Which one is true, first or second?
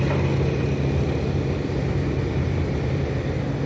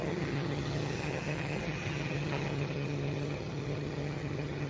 first